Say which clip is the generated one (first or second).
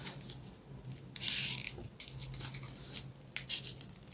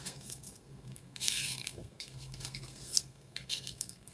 second